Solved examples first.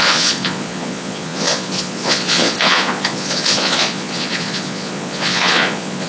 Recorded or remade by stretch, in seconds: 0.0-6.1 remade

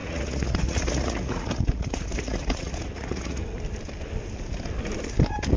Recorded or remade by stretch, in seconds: 0.0-3.4 remade; 3.4-5.6 recorded